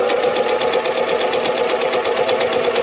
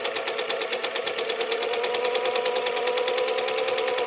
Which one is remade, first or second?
first